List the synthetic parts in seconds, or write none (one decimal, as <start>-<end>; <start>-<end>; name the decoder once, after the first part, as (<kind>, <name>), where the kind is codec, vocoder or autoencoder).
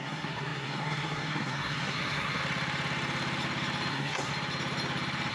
0.0-2.4 (codec, SNAC); 3.9-4.3